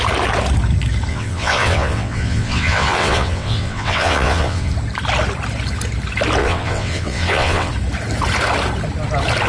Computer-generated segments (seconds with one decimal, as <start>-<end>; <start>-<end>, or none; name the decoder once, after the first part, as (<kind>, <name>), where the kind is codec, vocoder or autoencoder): 1.1-4.7 (vocoder, WaveNeXt); 6.4-7.7